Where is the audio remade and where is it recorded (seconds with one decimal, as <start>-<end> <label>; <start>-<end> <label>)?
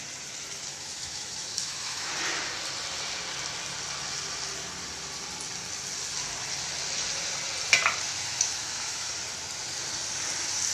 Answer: 0.0-0.7 recorded; 0.7-2.1 remade; 2.1-8.1 recorded; 8.1-9.1 remade; 9.1-10.7 recorded